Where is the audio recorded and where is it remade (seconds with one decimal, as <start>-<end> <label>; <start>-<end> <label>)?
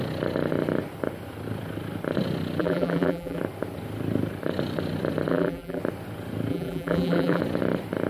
0.0-2.6 recorded; 2.6-3.4 remade; 3.4-5.3 recorded; 5.3-5.8 remade; 5.8-6.5 recorded; 6.5-7.4 remade; 7.4-8.1 recorded